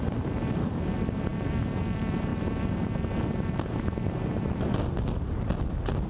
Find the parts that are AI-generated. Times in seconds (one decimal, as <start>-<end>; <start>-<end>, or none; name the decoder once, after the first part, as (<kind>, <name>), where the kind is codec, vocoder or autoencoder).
none